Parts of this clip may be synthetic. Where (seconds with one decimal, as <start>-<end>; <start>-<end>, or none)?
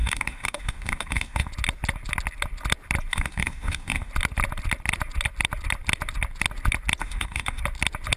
0.0-1.5; 3.1-4.1; 7.0-7.6